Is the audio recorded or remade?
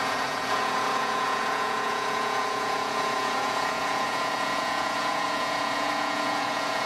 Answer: remade